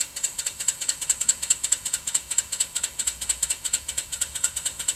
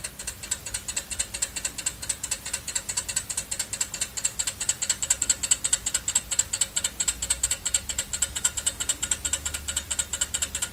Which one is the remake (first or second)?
first